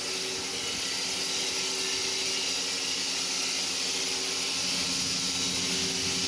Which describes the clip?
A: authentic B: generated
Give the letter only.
A